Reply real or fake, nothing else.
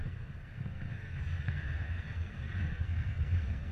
fake